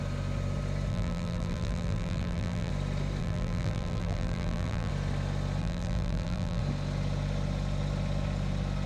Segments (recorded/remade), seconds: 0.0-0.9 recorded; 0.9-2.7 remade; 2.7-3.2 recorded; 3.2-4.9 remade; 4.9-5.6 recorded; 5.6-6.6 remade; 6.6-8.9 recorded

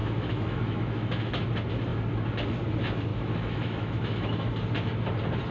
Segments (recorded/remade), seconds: 0.0-1.5 remade; 1.5-3.1 recorded; 3.1-4.5 remade; 4.5-5.5 recorded

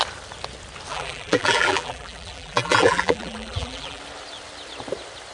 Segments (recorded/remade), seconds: 0.0-0.9 recorded; 0.9-4.0 remade; 4.0-5.3 recorded

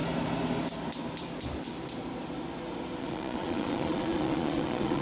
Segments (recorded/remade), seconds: 0.0-3.0 recorded; 3.0-5.0 remade

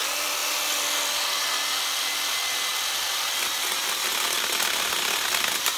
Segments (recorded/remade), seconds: 0.0-5.8 recorded